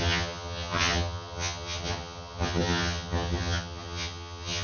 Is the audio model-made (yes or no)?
yes